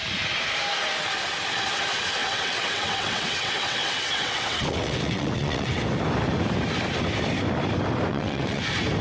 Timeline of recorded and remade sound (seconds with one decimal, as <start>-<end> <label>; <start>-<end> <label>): 0.0-2.2 recorded; 2.2-5.8 remade; 5.8-8.1 recorded; 8.1-8.6 remade; 8.6-9.0 recorded